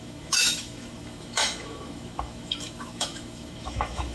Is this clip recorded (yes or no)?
no